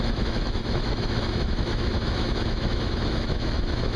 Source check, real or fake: fake